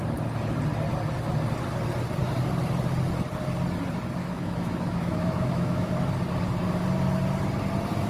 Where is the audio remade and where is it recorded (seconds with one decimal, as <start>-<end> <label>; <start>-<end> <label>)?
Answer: 0.0-4.2 recorded; 4.2-5.9 remade; 5.9-8.1 recorded